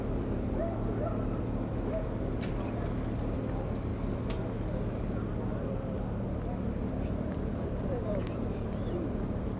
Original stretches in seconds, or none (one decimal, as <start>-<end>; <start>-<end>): 0.0-9.6